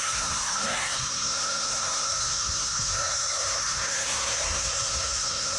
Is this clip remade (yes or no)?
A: yes